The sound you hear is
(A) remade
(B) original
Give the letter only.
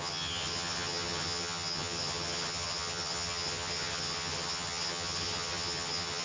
A